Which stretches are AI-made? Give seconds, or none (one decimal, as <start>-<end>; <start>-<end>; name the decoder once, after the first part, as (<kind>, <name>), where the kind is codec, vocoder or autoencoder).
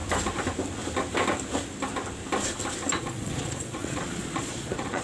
3.0-5.0 (vocoder, Vocos)